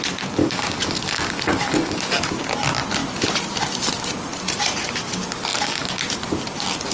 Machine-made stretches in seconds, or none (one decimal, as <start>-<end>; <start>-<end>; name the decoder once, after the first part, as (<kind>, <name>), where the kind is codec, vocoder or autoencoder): 0.4-2.2 (codec, DAC); 5.5-6.0